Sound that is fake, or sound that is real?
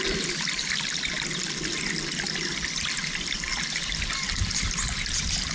real